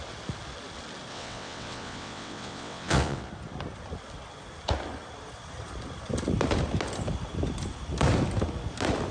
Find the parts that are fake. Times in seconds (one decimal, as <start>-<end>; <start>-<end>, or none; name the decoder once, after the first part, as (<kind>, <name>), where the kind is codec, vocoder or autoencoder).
1.1-3.3 (vocoder, WaveNeXt)